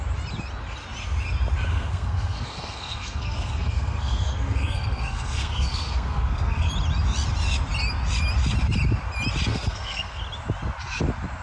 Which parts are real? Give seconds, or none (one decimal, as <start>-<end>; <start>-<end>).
0.0-1.7; 6.7-9.5; 10.2-11.4